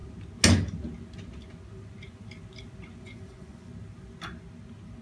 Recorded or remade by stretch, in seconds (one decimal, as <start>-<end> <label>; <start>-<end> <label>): 0.0-3.0 recorded; 3.0-3.7 remade; 3.7-5.0 recorded